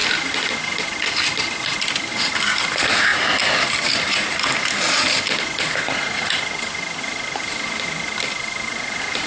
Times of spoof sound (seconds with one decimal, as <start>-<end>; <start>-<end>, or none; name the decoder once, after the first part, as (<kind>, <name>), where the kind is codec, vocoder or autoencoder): none